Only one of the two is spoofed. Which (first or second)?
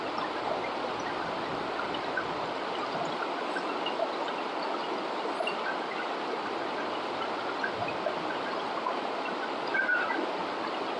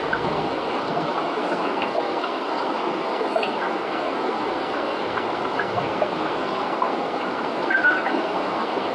second